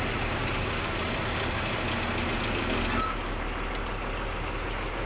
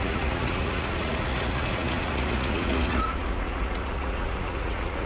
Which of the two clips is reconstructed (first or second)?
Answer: second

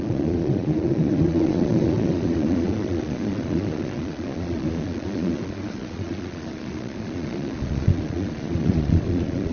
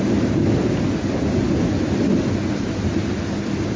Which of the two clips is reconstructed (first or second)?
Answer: first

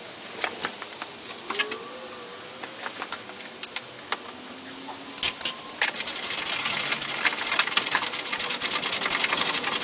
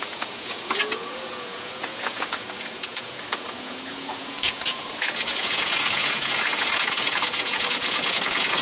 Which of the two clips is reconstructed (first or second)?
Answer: second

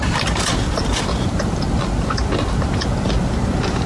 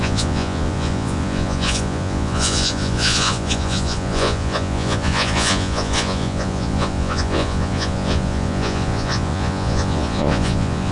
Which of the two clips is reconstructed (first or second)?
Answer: second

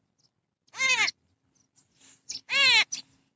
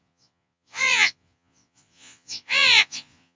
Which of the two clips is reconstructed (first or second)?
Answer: second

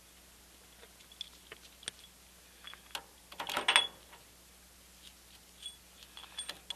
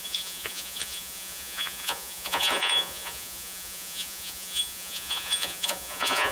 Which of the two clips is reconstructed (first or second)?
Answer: second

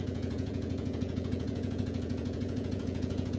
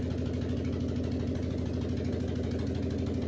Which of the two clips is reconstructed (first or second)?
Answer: first